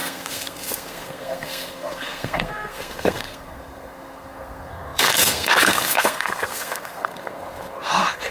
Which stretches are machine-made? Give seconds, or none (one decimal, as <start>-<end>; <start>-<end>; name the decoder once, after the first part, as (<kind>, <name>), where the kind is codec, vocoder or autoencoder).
0.0-8.3 (codec, SNAC)